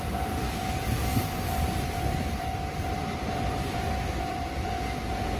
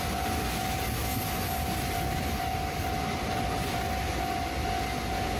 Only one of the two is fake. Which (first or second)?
first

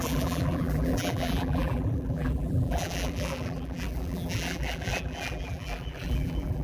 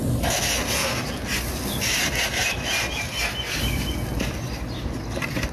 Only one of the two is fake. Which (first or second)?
first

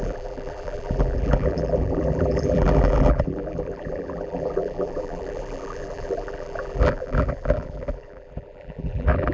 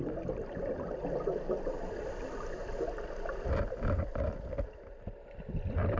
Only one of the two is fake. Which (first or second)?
first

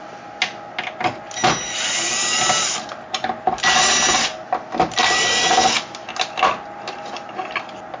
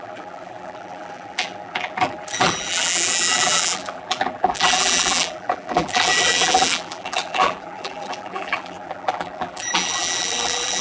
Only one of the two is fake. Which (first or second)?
second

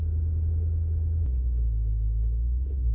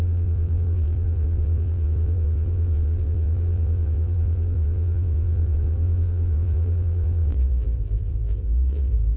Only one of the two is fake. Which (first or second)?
second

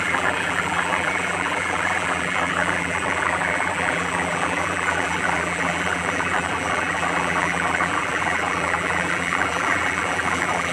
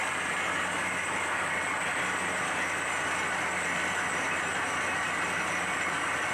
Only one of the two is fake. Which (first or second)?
first